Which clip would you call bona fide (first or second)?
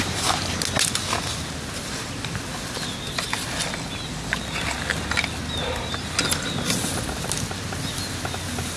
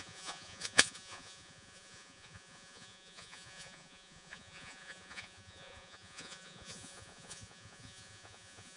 first